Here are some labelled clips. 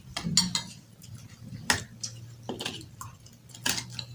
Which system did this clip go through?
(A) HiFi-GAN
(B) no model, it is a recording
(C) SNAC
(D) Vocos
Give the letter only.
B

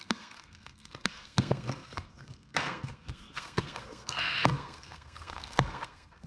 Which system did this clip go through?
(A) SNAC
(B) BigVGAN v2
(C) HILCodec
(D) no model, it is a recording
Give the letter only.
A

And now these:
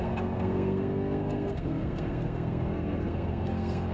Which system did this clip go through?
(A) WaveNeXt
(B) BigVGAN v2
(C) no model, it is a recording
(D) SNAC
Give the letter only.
D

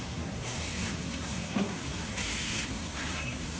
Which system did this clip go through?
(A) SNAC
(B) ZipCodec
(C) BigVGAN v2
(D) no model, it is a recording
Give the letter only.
A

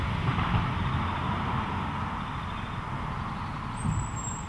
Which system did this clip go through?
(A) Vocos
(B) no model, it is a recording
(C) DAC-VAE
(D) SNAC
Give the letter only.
B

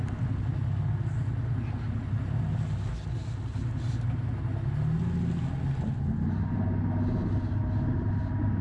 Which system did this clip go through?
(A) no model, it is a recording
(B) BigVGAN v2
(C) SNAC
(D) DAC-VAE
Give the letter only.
A